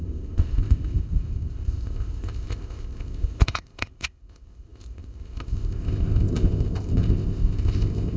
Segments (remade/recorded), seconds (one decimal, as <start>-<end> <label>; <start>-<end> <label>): 0.0-8.2 remade